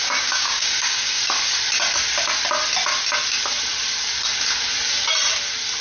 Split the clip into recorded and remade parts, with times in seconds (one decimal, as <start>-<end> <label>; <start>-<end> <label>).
0.0-1.2 remade; 1.2-5.8 recorded